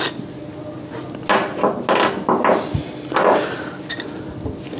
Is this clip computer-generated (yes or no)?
no